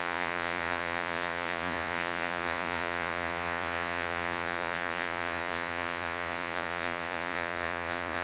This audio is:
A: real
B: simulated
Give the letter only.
B